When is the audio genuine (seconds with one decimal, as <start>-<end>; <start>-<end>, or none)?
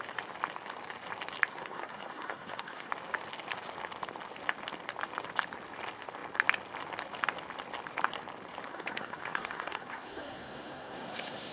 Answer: 0.0-1.5; 2.9-8.7